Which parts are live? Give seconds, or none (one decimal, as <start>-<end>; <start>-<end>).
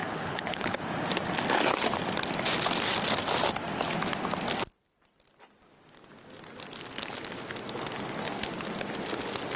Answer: 0.8-9.6